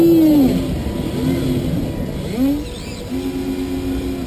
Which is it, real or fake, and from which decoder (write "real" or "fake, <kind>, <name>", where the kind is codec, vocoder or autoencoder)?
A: real